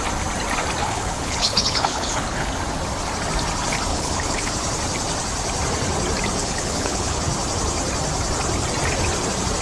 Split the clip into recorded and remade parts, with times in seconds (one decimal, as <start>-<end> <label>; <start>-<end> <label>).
0.0-0.8 recorded; 0.8-2.5 remade; 2.5-3.9 recorded; 3.9-4.5 remade; 4.5-6.4 recorded; 6.4-7.2 remade; 7.2-9.6 recorded